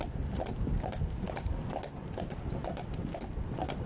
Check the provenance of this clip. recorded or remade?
recorded